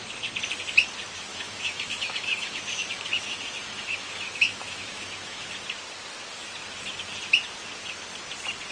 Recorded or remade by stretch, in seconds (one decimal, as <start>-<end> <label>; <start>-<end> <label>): 0.0-1.3 recorded; 1.3-5.5 remade; 5.5-8.7 recorded